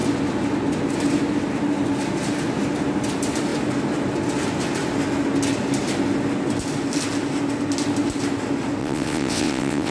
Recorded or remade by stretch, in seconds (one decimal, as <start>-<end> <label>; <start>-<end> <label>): 0.0-8.8 recorded; 8.8-9.9 remade